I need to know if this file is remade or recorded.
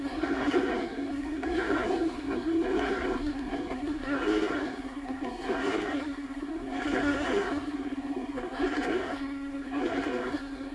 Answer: remade